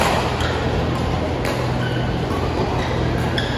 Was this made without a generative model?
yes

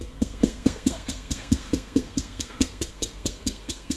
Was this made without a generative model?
no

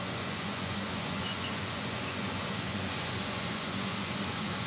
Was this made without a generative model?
no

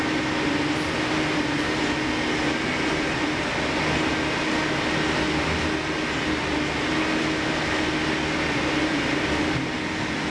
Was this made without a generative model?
yes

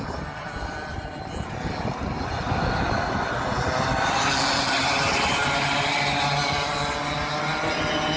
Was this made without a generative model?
yes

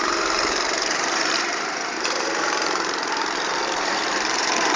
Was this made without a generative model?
no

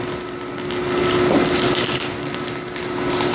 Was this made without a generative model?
yes